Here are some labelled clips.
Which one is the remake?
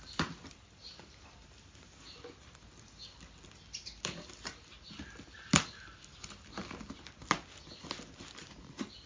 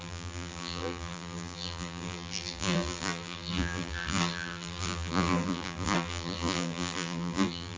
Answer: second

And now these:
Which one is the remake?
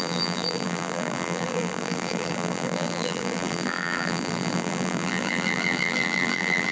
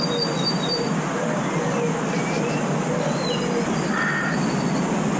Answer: first